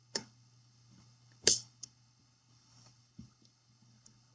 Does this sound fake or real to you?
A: fake